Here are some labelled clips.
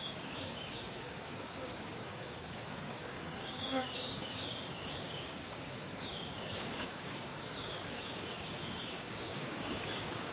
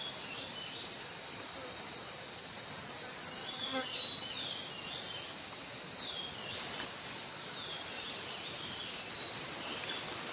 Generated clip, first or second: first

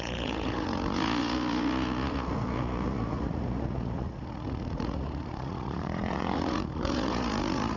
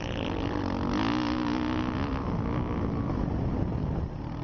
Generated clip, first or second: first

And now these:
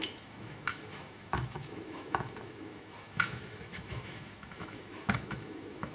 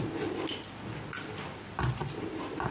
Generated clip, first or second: first